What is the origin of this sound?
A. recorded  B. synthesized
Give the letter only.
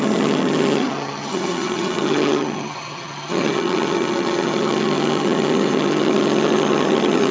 B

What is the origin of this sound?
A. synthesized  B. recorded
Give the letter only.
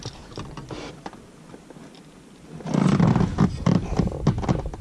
B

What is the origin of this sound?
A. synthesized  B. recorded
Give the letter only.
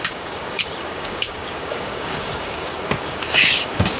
A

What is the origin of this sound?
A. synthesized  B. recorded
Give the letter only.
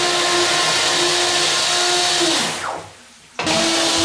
B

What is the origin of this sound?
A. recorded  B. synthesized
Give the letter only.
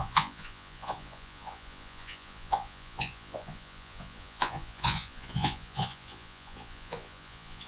B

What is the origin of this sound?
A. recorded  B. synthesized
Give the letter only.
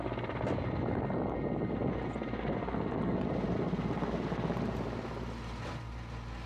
A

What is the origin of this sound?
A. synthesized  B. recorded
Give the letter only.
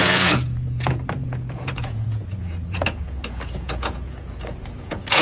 A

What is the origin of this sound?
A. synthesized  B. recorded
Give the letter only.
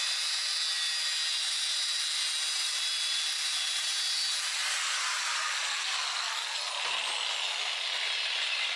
B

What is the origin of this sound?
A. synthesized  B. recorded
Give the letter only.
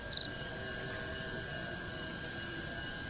B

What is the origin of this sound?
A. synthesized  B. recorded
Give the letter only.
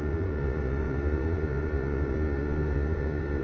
A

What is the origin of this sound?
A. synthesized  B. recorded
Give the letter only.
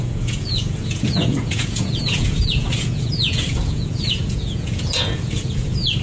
A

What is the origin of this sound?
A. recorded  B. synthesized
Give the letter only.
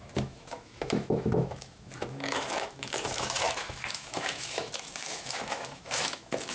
B